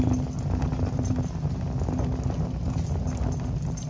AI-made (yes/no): no